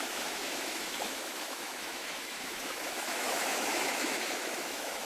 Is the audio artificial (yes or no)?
yes